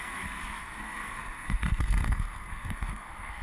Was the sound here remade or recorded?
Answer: remade